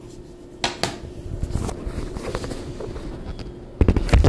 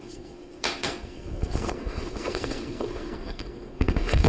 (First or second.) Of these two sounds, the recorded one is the first